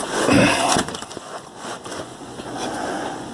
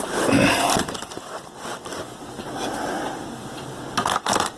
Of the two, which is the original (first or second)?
second